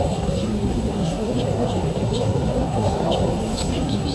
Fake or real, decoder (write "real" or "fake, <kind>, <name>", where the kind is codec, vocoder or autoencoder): fake, codec, SNAC